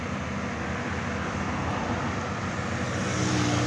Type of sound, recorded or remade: recorded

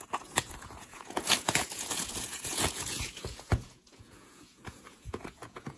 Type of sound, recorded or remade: remade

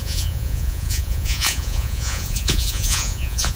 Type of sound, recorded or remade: remade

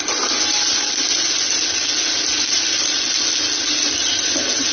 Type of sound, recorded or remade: recorded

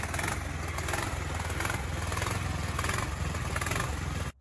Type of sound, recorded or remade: recorded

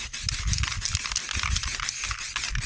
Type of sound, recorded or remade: recorded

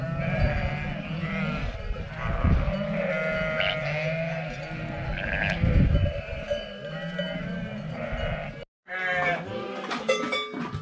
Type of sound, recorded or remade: recorded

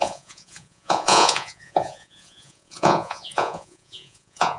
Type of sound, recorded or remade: remade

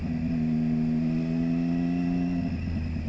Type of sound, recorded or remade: recorded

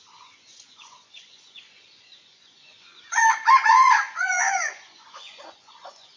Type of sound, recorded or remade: remade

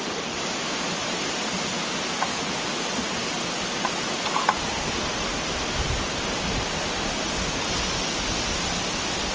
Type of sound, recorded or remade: recorded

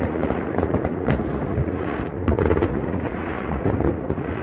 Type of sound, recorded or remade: remade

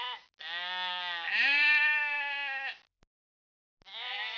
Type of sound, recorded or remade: recorded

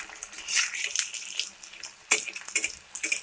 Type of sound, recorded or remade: recorded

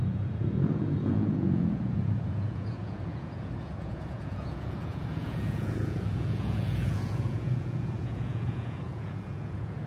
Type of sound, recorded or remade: remade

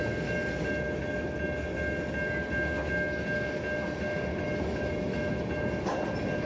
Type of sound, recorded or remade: recorded